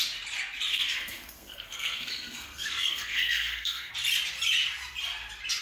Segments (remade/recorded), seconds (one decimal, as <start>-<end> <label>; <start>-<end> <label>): 0.0-0.7 recorded; 0.7-3.9 remade; 3.9-5.6 recorded